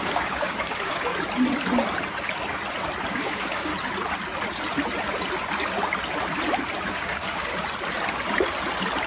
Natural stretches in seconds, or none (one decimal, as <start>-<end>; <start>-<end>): 1.1-3.1; 3.7-6.9; 7.5-9.1